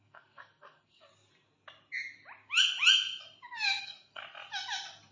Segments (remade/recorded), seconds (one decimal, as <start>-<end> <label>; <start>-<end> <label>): 0.0-1.1 remade; 1.1-3.8 recorded; 3.8-4.2 remade; 4.2-5.1 recorded